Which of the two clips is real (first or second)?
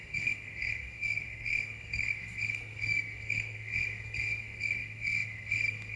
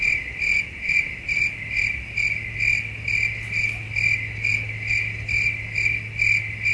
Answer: second